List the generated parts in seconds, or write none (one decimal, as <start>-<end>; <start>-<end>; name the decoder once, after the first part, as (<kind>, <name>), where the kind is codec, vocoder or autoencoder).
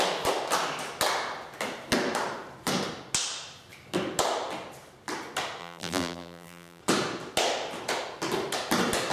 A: 5.6-6.8 (vocoder, BigVGAN v2)